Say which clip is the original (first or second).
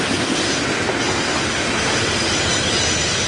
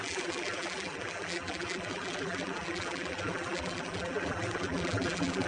first